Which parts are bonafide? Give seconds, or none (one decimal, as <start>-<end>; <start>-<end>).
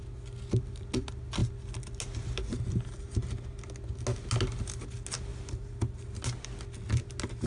0.0-5.3; 6.2-7.5